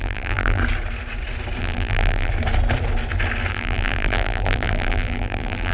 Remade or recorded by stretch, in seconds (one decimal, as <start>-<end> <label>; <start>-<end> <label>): 0.0-0.6 remade; 0.6-1.6 recorded; 1.6-2.3 remade; 2.3-3.5 recorded; 3.5-5.7 remade

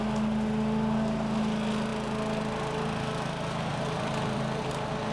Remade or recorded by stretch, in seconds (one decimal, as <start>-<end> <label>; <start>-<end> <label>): 0.0-3.7 recorded; 3.7-4.6 remade; 4.6-5.1 recorded

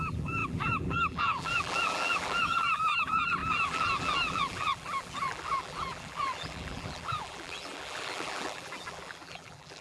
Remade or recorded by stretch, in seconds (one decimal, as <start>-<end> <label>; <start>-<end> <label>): 0.0-9.8 remade

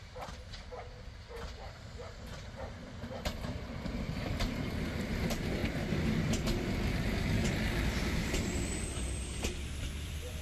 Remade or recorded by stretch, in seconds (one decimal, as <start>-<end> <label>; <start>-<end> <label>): 0.0-5.6 remade; 5.6-7.0 recorded; 7.0-10.4 remade

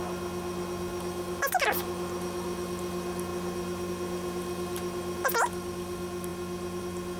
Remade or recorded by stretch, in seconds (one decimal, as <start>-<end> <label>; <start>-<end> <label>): 0.0-7.2 recorded

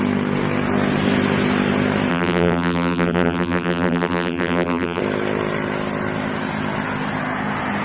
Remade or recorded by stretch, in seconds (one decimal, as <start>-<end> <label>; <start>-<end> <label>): 0.0-2.1 recorded; 2.1-5.0 remade; 5.0-7.8 recorded